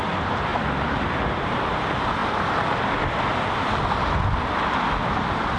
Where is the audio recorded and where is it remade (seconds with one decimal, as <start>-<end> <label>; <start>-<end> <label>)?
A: 0.0-5.6 recorded